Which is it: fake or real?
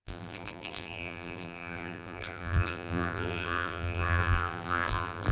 fake